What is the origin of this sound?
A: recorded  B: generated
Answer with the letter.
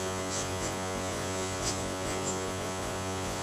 B